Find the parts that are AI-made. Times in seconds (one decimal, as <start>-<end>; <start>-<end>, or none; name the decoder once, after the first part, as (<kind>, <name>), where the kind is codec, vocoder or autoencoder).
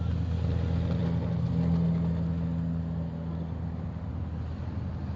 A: none